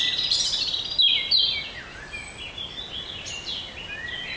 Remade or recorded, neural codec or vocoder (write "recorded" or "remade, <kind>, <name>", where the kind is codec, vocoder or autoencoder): recorded